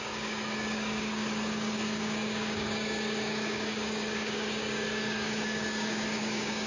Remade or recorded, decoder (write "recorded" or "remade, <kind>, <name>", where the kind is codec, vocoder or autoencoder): remade, codec, DAC